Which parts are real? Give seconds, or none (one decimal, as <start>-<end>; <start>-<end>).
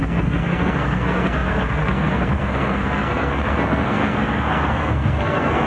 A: none